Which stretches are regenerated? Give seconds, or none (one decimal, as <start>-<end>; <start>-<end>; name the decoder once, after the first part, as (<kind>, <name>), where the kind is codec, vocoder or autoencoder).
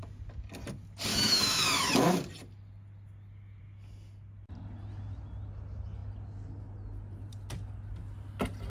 1.1-1.9 (autoencoder, DAC-VAE)